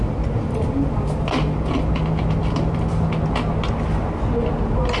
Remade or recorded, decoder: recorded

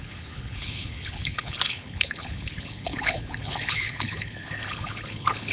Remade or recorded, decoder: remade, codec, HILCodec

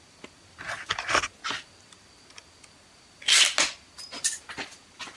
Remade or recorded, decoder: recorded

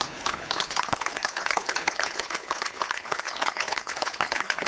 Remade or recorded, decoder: remade, codec, HILCodec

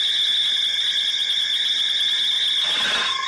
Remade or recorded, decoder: recorded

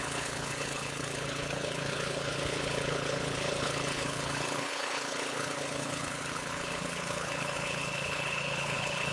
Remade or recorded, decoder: remade, codec, HILCodec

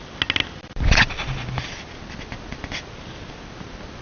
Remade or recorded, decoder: recorded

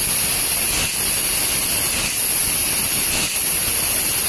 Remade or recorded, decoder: recorded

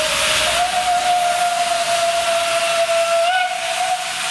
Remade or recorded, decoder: recorded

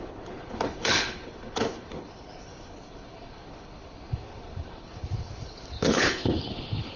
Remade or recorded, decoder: remade, codec, HILCodec